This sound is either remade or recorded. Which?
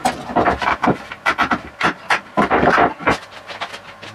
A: recorded